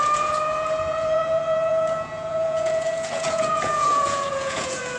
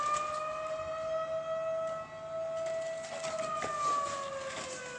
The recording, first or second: second